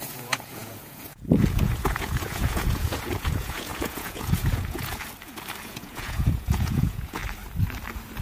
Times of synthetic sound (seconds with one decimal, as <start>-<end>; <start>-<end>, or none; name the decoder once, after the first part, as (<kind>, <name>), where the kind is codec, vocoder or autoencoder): 0.0-4.9 (vocoder, Vocos); 5.6-7.2